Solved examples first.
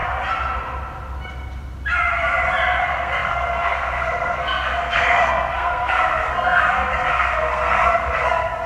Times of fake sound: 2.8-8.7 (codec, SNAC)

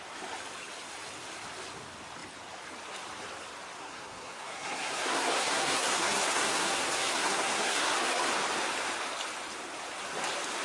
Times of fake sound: 3.8-8.3 (codec, SNAC)

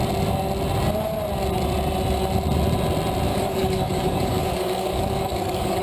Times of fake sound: 3.3-5.8 (codec, DAC)